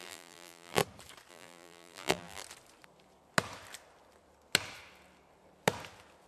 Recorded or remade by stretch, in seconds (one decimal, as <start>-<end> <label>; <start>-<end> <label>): 0.0-0.8 remade; 0.8-1.3 recorded; 1.3-2.4 remade; 2.4-6.3 recorded